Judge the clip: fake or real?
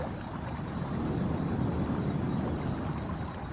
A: real